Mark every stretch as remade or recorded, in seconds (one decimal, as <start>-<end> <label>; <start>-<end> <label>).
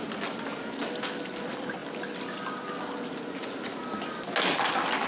0.0-5.1 recorded